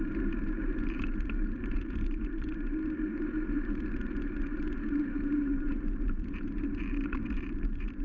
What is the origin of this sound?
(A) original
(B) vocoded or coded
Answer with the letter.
B